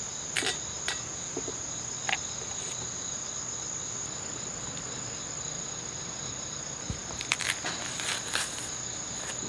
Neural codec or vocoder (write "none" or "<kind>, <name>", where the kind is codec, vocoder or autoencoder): none